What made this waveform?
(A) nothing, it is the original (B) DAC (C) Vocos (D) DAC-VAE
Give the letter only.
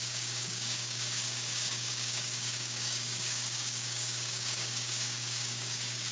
B